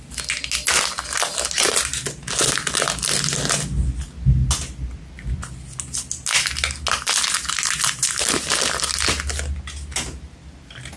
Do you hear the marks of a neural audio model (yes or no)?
no